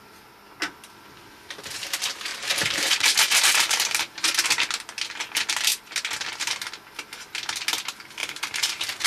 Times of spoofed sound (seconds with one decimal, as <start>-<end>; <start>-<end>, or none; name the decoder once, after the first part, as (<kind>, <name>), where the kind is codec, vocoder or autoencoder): 2.3-4.3 (vocoder, BigVGAN v2); 8.2-9.1